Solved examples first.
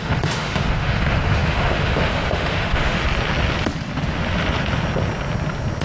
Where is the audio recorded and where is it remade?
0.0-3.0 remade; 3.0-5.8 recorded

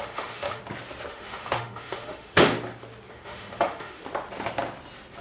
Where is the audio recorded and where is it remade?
0.0-0.6 remade; 0.6-1.1 recorded; 1.1-2.5 remade; 2.5-3.1 recorded; 3.1-4.0 remade; 4.0-5.2 recorded

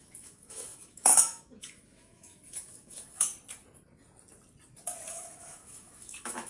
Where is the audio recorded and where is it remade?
0.0-3.3 remade; 3.3-5.1 recorded; 5.1-6.5 remade

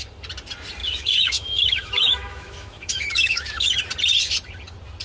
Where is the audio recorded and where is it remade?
0.0-0.8 recorded; 0.8-3.8 remade; 3.8-5.0 recorded

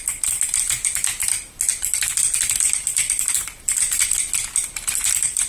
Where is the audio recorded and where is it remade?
0.0-5.5 recorded